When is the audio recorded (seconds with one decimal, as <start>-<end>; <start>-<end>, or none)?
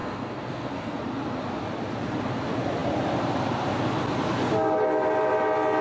1.0-5.8